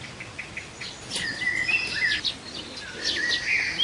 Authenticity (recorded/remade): recorded